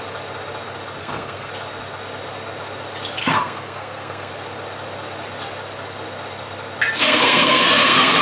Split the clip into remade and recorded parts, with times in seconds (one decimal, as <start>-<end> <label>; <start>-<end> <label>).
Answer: 0.0-1.0 recorded; 1.0-1.5 remade; 1.5-3.2 recorded; 3.2-4.3 remade; 4.3-7.0 recorded; 7.0-8.2 remade